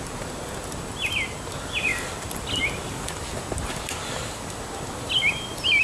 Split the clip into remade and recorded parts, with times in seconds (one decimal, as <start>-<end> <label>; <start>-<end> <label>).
0.0-5.8 recorded